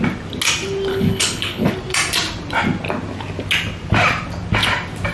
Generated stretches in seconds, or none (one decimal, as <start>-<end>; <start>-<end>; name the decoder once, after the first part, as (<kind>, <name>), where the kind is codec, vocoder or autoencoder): 0.9-1.7 (codec, HILCodec)